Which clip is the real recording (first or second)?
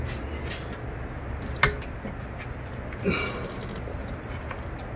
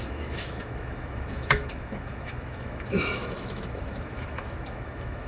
first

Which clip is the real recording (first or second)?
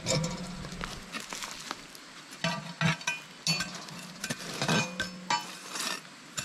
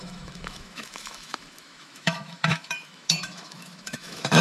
first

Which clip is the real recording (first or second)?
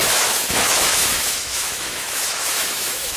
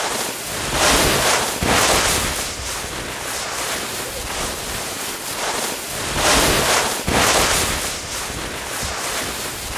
second